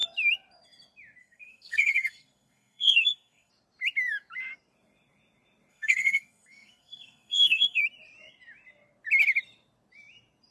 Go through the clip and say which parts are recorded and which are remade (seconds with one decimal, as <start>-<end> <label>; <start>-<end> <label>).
0.0-1.2 recorded; 1.2-3.5 remade; 3.5-5.7 recorded; 5.7-7.8 remade; 7.8-10.5 recorded